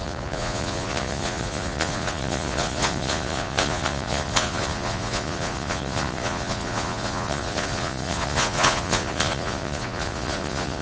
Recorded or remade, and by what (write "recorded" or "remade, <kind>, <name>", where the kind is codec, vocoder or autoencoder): remade, vocoder, Vocos